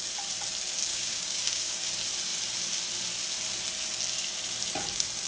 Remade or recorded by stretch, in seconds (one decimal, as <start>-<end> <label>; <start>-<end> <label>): 0.0-0.9 recorded; 0.9-1.9 remade; 1.9-5.3 recorded